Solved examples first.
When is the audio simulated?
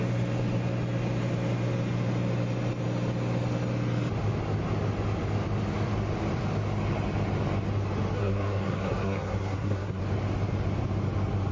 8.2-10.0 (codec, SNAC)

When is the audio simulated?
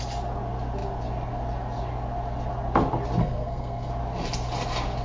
3.2-3.9 (codec, SNAC)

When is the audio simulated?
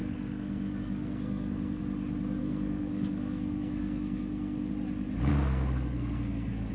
0.0-1.8 (codec, SNAC); 2.4-4.7; 5.3-6.7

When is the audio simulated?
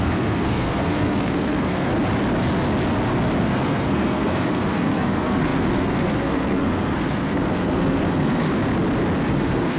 0.0-1.9 (codec, SNAC); 3.4-8.5; 9.3-9.8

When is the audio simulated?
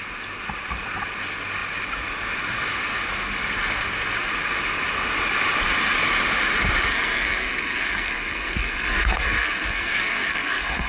6.9-10.9 (codec, SNAC)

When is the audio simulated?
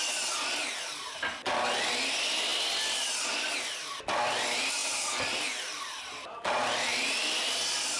none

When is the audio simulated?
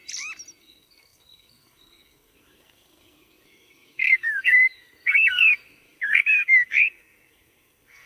0.6-8.1 (codec, SNAC)